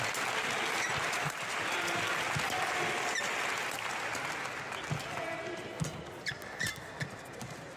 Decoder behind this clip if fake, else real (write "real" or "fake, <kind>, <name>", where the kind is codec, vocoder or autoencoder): real